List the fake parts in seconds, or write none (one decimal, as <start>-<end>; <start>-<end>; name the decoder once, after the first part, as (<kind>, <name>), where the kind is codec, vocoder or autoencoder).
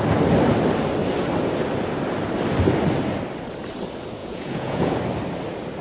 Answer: 4.2-5.0 (vocoder, Vocos)